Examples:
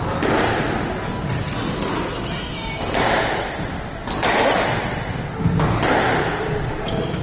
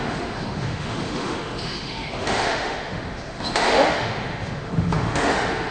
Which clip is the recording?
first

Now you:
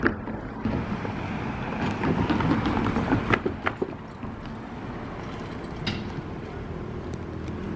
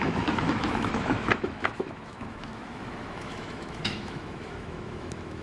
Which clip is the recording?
first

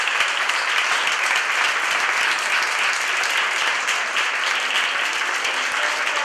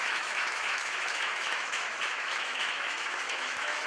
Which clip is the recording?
first